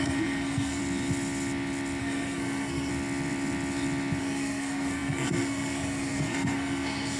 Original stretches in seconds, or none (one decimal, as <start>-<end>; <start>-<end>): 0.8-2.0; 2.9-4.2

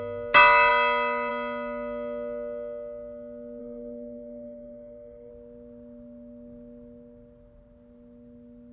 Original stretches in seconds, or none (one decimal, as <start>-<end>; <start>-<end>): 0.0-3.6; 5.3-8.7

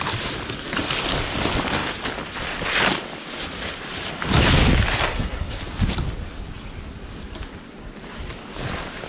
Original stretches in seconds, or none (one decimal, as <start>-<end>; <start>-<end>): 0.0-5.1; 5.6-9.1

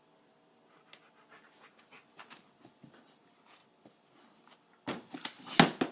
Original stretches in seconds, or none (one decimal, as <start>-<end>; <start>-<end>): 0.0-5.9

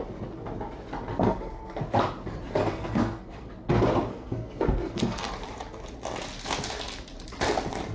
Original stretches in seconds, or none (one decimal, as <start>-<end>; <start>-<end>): 0.0-1.1; 1.8-2.6; 3.5-4.1; 5.3-7.9

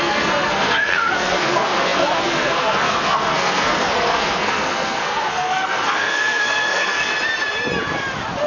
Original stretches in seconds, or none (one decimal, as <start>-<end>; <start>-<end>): 7.1-8.5

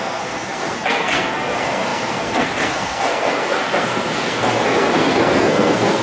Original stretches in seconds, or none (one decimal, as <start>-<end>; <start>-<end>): none

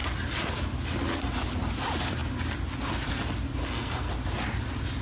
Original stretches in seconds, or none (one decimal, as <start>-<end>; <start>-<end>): 0.0-3.6; 4.1-5.0